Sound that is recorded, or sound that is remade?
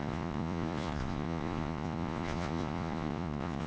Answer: remade